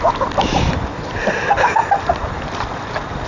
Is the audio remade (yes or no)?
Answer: no